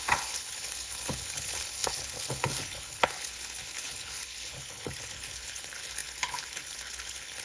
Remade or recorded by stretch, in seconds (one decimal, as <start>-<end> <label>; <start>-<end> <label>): 0.0-7.4 remade